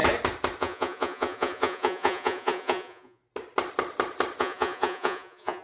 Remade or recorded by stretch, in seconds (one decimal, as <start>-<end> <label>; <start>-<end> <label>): 0.0-0.6 recorded; 0.6-3.2 remade; 3.2-4.4 recorded; 4.4-5.6 remade

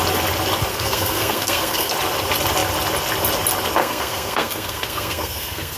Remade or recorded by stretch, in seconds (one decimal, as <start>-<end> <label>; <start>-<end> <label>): 0.0-0.7 recorded; 0.7-1.9 remade; 1.9-3.8 recorded; 3.8-5.8 remade

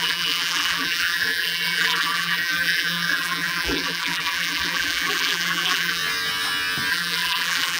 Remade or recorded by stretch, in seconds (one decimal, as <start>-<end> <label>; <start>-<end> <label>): 0.0-6.0 remade; 6.0-6.9 recorded; 6.9-7.8 remade

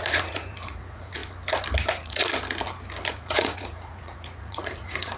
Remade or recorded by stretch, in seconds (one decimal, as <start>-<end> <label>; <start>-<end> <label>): 0.0-1.2 remade; 1.2-1.9 recorded; 1.9-2.3 remade; 2.3-3.1 recorded; 3.1-5.2 remade